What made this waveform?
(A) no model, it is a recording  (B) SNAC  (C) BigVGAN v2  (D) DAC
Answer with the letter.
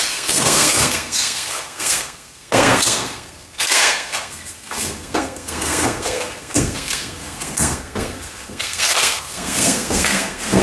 B